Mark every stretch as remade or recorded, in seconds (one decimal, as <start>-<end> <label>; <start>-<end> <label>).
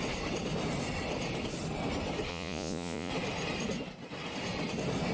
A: 0.0-2.3 recorded; 2.3-3.1 remade; 3.1-5.1 recorded